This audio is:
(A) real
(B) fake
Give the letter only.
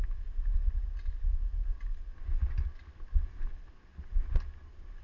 A